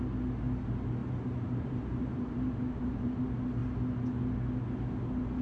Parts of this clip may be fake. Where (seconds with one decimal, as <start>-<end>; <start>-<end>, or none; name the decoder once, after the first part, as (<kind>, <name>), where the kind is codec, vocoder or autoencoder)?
1.0-3.2 (vocoder, BigVGAN v2)